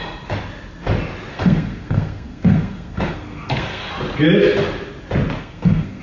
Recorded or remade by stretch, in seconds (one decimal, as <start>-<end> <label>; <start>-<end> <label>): 0.0-1.3 recorded; 1.3-3.9 remade; 3.9-5.4 recorded; 5.4-6.0 remade